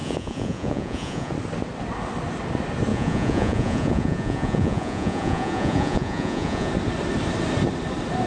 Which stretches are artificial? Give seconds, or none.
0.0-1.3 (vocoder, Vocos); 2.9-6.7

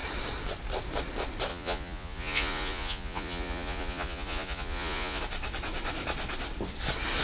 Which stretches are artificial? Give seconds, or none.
1.5-5.2 (vocoder, Vocos)